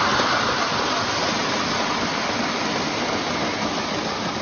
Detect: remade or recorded recorded